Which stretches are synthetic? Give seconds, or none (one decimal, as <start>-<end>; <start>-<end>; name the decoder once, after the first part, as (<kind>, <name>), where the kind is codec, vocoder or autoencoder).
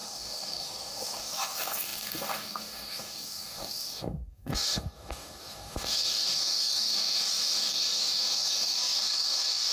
0.0-9.7 (codec, DAC)